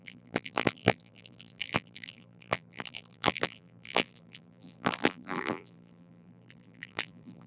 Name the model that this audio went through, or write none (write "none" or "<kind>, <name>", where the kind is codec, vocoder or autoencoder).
vocoder, BigVGAN v2